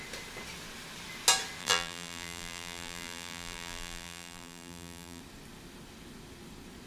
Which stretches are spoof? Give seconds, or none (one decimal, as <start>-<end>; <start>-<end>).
1.6-5.2